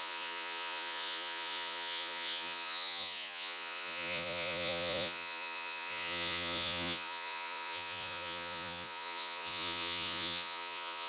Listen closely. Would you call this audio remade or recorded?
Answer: remade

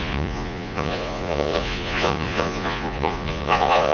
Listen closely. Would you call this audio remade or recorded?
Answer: remade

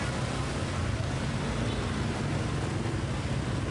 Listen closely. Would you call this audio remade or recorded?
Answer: recorded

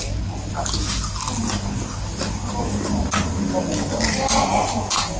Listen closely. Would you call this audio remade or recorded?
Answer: recorded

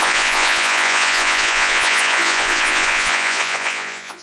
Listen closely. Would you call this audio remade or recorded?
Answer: remade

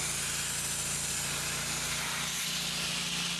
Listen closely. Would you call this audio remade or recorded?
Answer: recorded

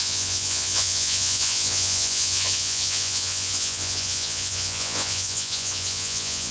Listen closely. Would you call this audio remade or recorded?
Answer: remade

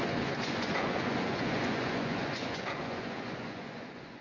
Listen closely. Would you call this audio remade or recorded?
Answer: remade